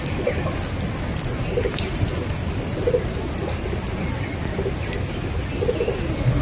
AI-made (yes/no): no